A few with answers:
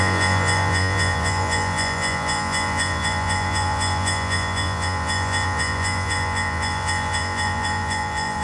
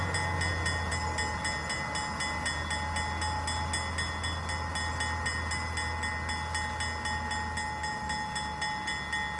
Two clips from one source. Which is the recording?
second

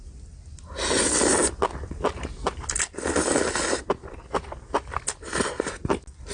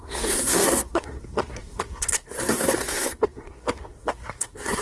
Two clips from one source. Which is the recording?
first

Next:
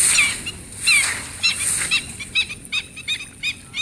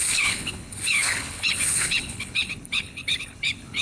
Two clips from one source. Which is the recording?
first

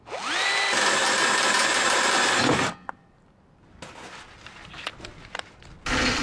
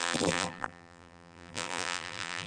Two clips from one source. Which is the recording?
first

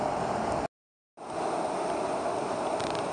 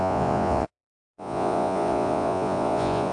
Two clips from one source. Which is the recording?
first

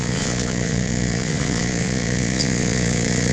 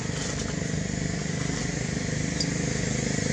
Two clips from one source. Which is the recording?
second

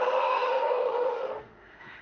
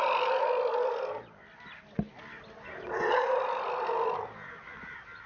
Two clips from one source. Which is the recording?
second